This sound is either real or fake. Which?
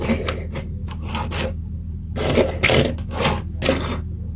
real